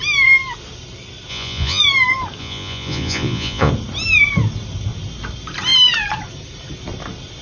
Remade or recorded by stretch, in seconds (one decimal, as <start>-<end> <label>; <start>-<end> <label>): 0.0-1.3 recorded; 1.3-1.8 remade; 1.8-2.4 recorded; 2.4-3.7 remade; 3.7-7.4 recorded